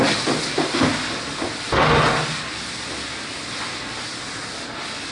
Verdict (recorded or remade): recorded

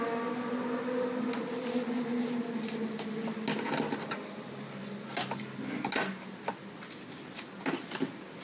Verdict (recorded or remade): recorded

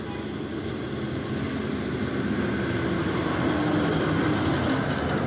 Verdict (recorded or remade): recorded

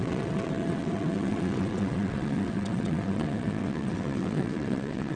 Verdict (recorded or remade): remade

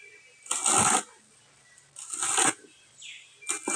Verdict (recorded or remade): recorded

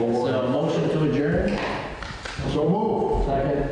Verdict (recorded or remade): recorded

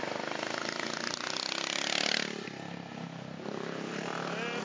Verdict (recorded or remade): recorded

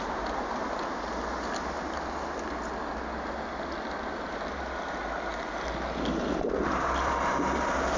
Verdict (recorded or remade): recorded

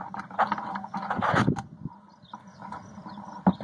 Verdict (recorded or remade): recorded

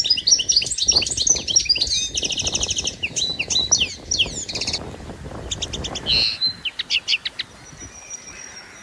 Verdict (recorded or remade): recorded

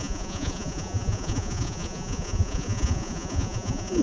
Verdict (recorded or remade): remade